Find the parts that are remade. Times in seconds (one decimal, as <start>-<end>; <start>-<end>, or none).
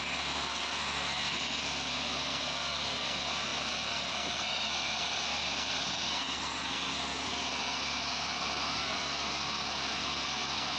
0.0-10.8